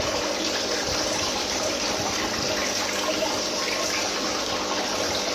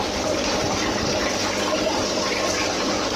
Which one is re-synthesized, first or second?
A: second